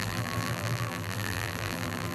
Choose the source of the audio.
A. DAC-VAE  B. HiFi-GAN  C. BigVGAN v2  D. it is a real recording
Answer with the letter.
C